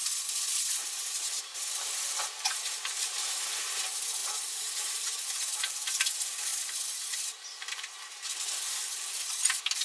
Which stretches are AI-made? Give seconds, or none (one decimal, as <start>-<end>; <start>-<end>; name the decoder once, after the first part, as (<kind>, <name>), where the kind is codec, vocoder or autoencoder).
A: none